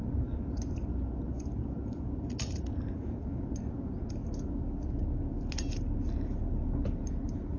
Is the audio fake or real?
real